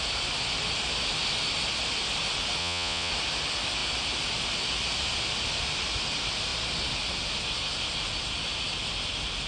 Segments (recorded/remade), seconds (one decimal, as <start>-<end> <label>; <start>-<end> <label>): 0.0-2.6 recorded; 2.6-3.1 remade; 3.1-9.5 recorded